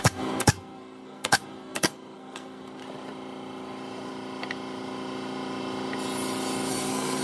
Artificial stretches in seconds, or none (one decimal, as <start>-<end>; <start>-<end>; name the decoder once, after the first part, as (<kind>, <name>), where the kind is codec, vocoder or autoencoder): 0.0-2.8 (codec, SNAC); 6.7-7.2